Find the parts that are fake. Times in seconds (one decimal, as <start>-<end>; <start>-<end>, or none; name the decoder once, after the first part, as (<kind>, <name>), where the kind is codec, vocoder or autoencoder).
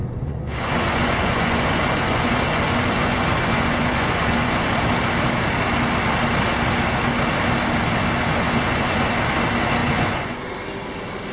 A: 0.0-4.7 (vocoder, Vocos); 8.2-9.1; 9.8-10.5